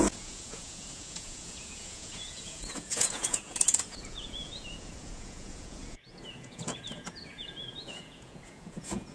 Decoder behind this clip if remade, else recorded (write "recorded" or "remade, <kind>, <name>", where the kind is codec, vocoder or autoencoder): remade, vocoder, Vocos